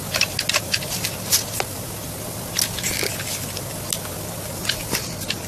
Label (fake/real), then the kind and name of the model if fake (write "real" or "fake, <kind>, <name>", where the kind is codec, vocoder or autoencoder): real